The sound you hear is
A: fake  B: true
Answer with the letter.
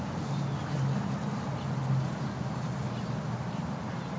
B